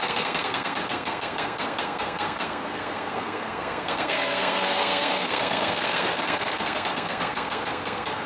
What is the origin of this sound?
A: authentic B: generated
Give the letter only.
B